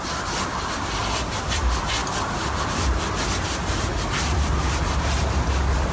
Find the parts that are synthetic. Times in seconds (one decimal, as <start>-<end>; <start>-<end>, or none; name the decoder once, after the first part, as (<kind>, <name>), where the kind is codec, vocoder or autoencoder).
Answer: none